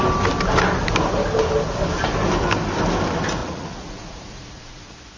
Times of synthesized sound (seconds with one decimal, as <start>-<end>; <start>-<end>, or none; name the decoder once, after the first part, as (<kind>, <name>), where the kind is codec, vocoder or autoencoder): 3.4-4.8 (vocoder, Vocos)